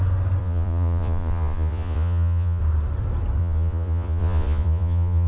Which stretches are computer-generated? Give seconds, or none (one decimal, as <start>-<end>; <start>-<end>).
0.4-2.6; 3.4-5.3